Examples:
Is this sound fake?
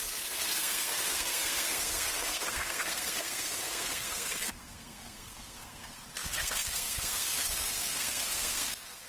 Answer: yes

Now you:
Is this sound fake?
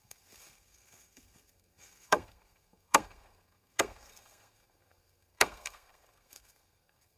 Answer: yes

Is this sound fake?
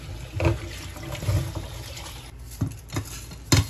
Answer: no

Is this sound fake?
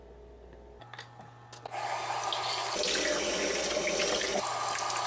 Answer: no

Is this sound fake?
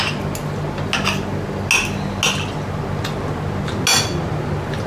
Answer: no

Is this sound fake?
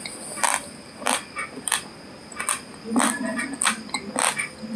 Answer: no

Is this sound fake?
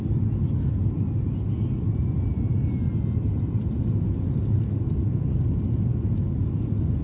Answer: no